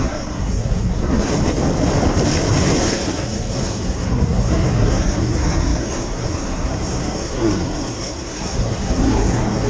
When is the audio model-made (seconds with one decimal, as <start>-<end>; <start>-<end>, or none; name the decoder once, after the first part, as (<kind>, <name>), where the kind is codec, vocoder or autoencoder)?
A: 0.0-1.3 (codec, SNAC); 2.8-9.7